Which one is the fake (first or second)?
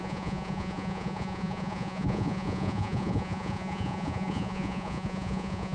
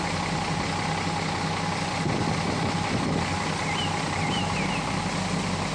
first